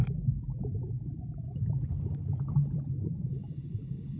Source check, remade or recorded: recorded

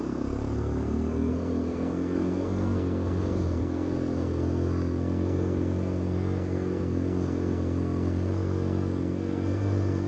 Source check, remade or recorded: remade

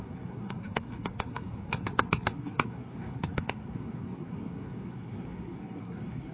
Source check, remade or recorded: remade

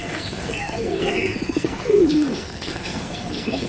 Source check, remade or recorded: remade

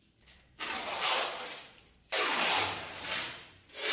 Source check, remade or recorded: recorded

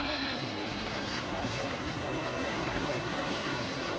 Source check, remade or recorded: remade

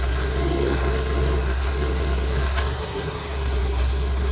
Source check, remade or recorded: remade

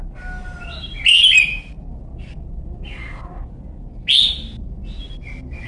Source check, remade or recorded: recorded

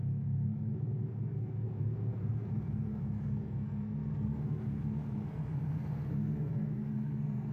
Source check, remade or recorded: remade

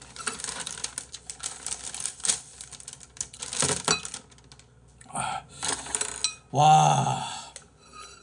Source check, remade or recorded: recorded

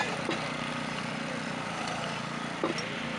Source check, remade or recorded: recorded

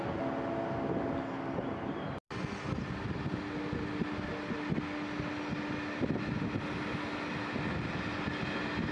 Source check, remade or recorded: recorded